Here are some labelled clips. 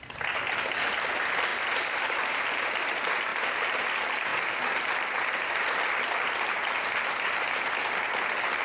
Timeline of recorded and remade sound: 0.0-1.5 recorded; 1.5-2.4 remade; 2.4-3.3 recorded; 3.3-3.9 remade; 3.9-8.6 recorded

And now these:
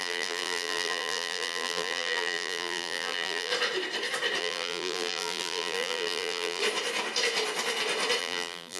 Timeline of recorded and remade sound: 0.0-3.5 remade; 3.5-4.4 recorded; 4.4-6.6 remade; 6.6-8.2 recorded; 8.2-8.8 remade

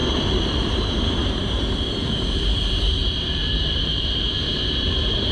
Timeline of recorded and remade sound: 0.0-5.3 remade

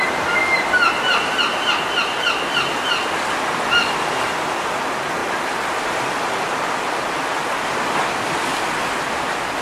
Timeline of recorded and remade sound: 0.0-5.2 recorded; 5.2-8.0 remade; 8.0-9.6 recorded